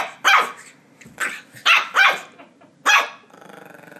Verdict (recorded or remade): recorded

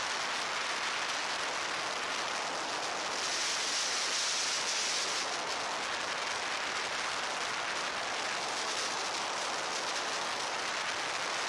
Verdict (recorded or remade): recorded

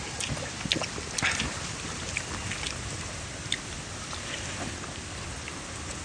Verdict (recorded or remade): recorded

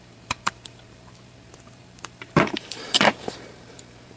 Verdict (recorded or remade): remade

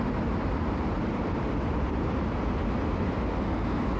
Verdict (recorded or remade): recorded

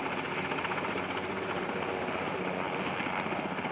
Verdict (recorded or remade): recorded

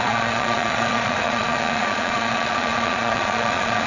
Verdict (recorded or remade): remade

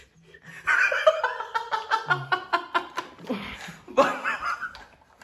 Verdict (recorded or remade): recorded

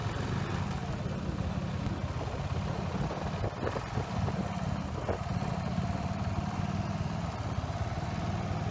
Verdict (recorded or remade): recorded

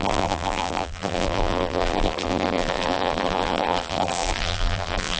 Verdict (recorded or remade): remade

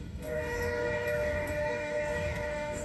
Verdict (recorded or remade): remade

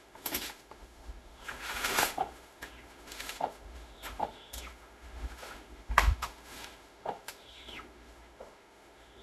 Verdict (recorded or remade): remade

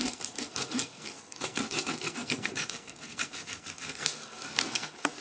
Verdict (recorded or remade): remade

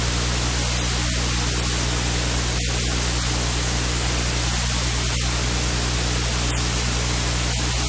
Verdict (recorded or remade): recorded